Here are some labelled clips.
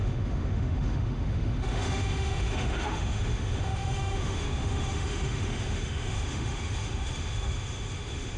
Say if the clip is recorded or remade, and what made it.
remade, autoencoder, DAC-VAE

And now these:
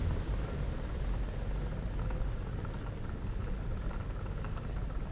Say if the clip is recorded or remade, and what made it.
recorded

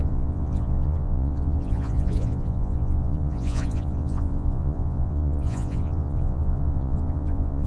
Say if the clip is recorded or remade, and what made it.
remade, vocoder, Vocos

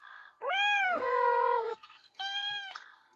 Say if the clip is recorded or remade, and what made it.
remade, codec, SNAC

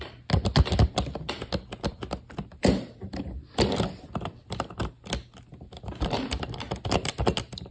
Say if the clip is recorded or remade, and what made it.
recorded